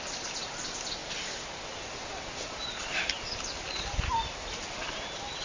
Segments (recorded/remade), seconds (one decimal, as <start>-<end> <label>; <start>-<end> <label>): 0.0-5.4 recorded